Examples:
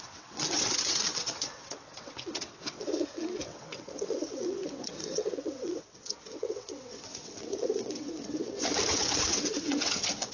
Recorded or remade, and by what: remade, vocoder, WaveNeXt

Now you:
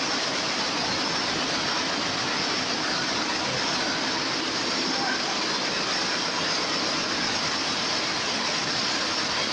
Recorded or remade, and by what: recorded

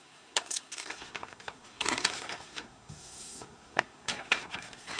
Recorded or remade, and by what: remade, codec, SNAC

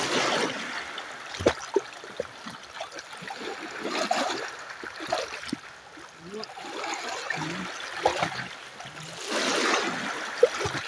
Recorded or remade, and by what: recorded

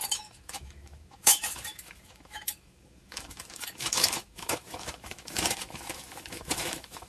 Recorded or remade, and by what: remade, autoencoder, DAC-VAE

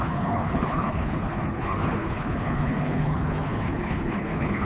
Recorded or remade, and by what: remade, codec, HILCodec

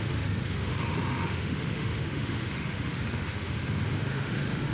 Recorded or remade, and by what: remade, autoencoder, DAC-VAE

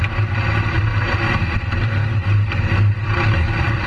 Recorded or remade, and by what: remade, vocoder, BigVGAN v2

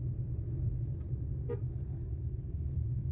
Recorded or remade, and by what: recorded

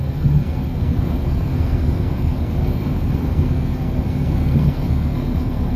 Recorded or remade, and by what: remade, codec, SNAC